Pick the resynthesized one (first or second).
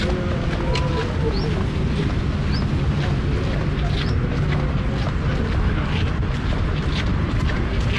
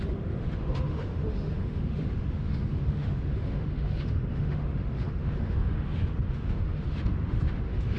second